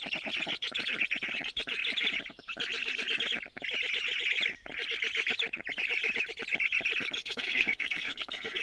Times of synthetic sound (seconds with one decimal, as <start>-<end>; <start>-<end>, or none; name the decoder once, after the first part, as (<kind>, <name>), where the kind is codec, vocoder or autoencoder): 7.2-8.6 (codec, SNAC)